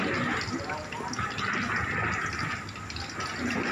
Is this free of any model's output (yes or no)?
yes